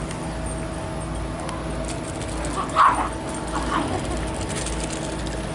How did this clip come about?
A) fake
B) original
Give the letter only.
B